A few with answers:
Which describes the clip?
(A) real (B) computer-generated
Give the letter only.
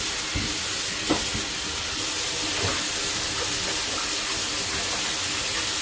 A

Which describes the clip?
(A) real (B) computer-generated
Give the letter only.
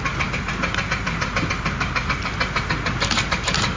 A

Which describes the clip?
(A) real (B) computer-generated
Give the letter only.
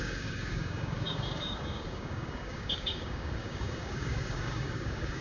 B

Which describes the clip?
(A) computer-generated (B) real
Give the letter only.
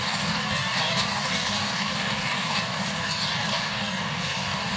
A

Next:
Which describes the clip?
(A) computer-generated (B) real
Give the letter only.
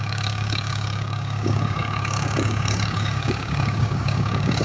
A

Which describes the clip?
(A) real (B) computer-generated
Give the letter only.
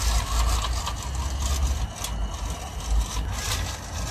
A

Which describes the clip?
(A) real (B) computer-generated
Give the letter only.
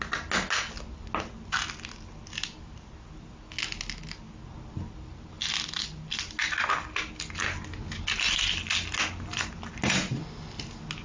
A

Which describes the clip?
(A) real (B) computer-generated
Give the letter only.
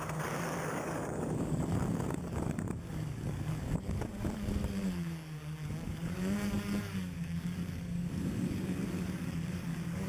B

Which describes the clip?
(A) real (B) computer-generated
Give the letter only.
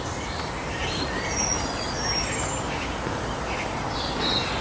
A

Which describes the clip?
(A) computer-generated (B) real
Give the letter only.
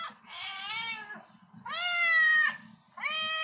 B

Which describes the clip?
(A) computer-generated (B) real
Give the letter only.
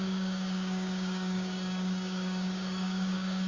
A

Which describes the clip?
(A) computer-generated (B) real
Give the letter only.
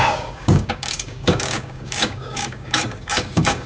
A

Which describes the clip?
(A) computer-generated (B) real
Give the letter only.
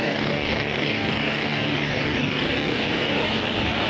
A